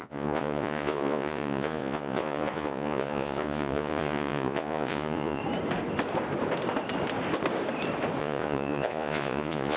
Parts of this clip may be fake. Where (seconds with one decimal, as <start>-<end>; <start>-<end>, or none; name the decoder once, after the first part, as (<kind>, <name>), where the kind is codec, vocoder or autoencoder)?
0.0-5.4 (vocoder, Vocos); 8.2-9.8